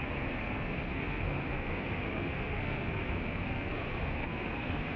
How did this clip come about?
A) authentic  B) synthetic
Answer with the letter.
B